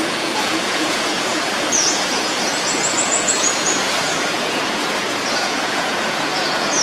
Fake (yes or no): yes